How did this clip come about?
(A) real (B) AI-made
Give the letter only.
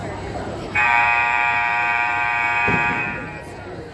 B